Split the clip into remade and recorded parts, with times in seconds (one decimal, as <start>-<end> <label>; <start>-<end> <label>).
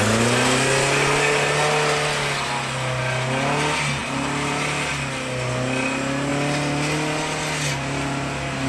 0.0-8.7 recorded